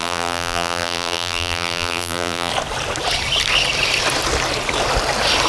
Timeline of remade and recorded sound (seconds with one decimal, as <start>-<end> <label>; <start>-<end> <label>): 0.0-2.5 remade; 2.5-5.5 recorded